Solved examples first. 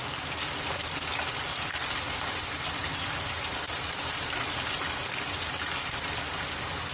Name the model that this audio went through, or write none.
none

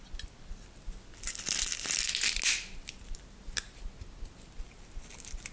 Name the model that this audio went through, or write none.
none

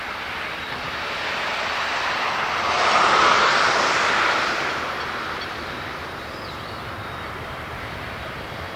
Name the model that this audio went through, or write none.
vocoder, BigVGAN v2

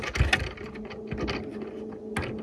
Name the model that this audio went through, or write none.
none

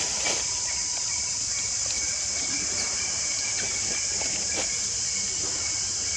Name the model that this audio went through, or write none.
none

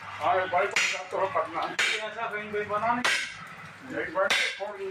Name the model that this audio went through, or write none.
none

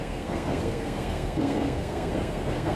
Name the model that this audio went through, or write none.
codec, SNAC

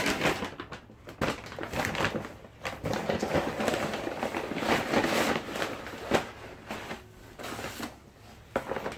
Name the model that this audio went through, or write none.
none